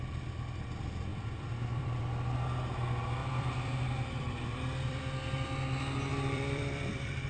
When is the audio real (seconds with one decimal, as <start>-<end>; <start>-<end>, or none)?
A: 0.0-1.1; 2.0-3.2; 5.0-6.1